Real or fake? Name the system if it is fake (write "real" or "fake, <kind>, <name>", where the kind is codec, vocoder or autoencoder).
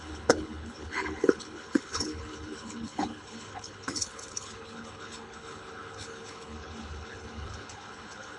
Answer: fake, codec, HILCodec